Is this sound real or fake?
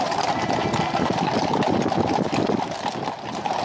real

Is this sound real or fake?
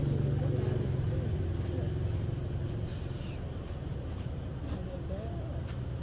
real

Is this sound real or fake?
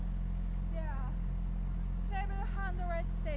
real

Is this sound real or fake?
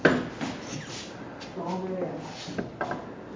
real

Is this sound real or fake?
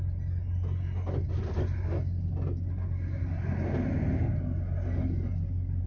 real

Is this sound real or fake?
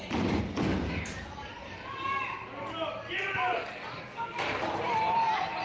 fake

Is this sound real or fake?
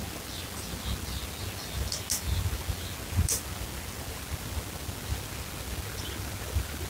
real